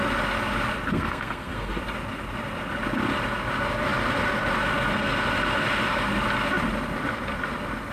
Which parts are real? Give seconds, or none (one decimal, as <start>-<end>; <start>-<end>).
0.0-0.9; 1.8-7.9